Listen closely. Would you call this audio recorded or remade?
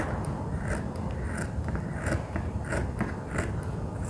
recorded